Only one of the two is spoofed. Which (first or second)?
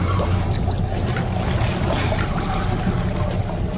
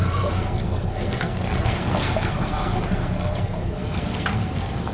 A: second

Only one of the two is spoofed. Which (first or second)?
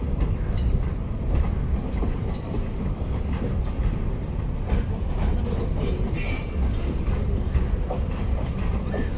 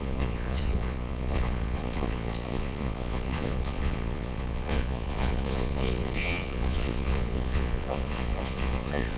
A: second